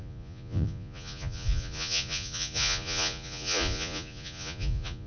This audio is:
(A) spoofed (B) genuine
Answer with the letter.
A